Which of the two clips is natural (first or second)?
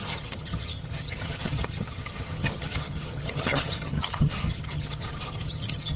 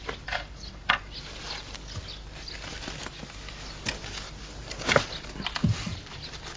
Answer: second